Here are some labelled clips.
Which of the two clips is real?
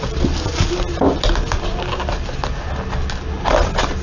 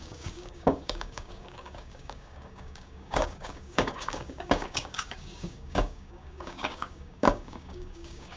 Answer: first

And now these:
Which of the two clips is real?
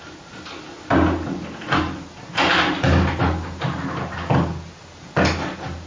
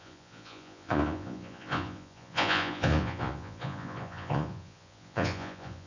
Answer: first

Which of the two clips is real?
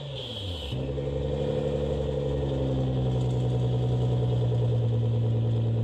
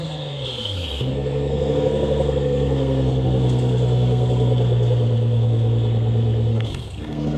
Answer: first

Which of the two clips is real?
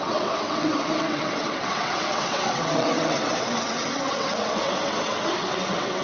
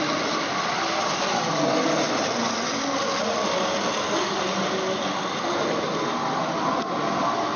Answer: second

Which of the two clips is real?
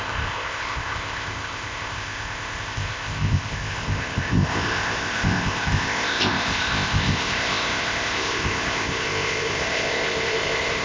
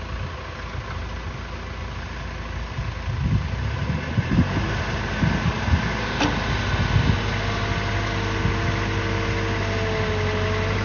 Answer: second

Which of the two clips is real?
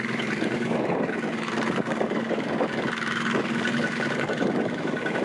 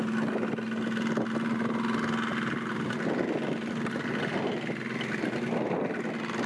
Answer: second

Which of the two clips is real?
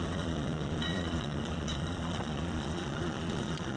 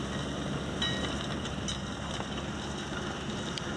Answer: second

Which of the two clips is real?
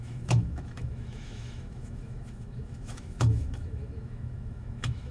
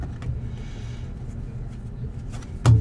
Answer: second